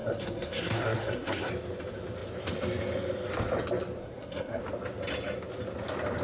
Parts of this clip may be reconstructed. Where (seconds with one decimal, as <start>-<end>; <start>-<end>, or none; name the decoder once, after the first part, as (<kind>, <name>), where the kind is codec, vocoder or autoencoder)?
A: 0.0-1.5 (codec, SNAC); 4.0-4.6